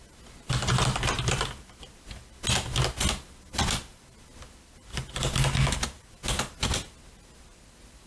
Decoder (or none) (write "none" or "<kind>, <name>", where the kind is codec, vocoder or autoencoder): none